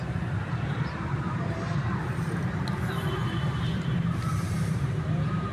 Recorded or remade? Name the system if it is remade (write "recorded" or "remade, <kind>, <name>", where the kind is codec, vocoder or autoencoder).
remade, vocoder, BigVGAN v2